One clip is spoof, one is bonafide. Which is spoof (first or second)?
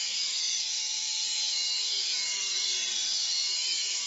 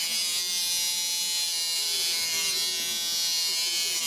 first